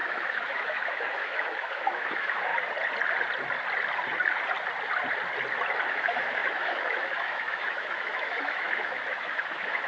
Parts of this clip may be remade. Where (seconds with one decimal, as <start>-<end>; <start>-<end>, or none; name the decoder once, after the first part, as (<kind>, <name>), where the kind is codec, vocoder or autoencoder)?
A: 0.0-2.5 (autoencoder, DAC-VAE); 5.9-9.9